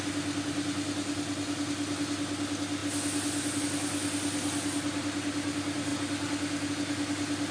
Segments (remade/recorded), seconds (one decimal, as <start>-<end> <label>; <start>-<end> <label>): 0.0-7.5 recorded